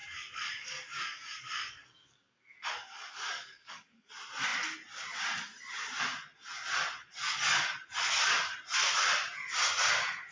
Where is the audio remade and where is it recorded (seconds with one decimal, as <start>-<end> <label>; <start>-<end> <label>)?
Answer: 0.0-4.1 remade; 4.1-7.2 recorded; 7.2-7.7 remade; 7.7-10.3 recorded